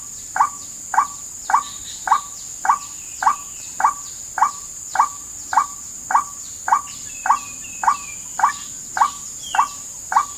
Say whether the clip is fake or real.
real